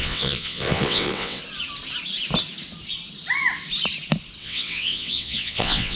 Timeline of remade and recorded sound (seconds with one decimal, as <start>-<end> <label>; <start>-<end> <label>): 0.0-1.4 remade; 1.4-4.4 recorded; 4.4-6.0 remade